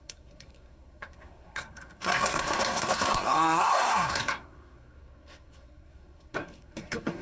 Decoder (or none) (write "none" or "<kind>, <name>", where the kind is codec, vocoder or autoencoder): codec, SNAC